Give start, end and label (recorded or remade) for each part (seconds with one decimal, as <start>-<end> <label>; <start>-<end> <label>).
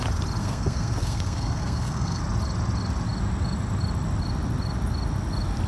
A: 0.0-0.4 recorded; 0.4-2.2 remade; 2.2-5.7 recorded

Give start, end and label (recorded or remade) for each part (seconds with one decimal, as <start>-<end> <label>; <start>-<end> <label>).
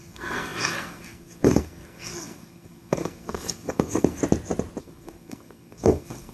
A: 0.0-4.2 remade; 4.2-4.8 recorded; 4.8-6.3 remade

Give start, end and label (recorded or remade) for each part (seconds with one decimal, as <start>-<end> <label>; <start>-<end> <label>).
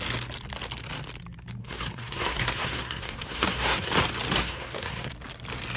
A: 0.0-1.6 recorded; 1.6-3.9 remade; 3.9-4.4 recorded; 4.4-5.1 remade; 5.1-5.8 recorded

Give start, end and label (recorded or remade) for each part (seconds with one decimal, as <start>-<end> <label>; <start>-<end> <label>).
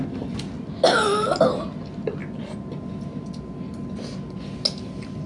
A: 0.0-5.3 recorded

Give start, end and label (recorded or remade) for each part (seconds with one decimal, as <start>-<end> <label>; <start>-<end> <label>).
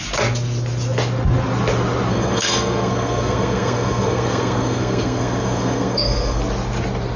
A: 0.0-2.1 recorded; 2.1-6.4 remade; 6.4-7.2 recorded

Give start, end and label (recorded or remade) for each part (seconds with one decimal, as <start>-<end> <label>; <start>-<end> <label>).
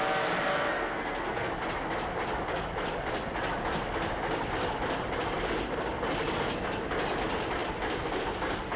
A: 0.0-0.5 recorded; 0.5-1.5 remade; 1.5-8.8 recorded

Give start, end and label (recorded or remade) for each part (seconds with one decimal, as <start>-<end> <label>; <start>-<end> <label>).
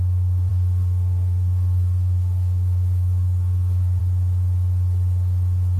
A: 0.0-0.5 recorded; 0.5-4.0 remade; 4.0-5.8 recorded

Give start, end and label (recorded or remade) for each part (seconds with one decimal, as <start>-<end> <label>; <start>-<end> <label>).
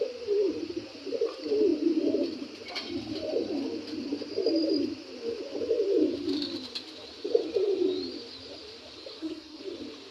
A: 0.0-9.1 recorded; 9.1-9.6 remade; 9.6-10.1 recorded